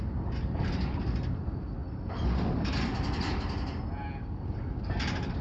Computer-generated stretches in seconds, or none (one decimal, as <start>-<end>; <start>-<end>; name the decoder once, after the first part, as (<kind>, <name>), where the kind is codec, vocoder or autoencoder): none